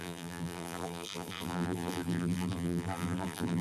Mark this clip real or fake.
fake